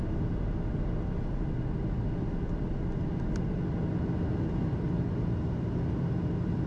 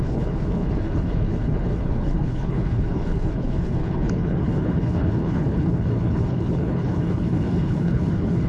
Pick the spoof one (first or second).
second